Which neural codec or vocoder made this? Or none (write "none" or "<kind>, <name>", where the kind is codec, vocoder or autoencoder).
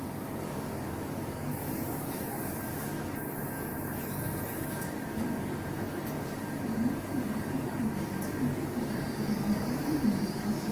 codec, DAC